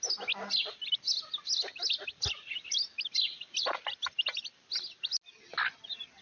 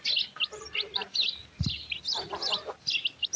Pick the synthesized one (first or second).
second